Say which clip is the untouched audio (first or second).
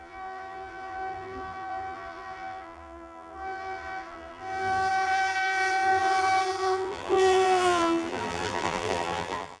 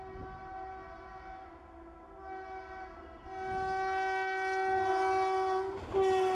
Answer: second